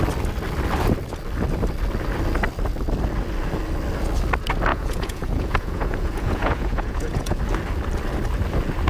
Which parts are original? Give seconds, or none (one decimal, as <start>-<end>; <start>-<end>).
0.0-4.7; 7.4-8.9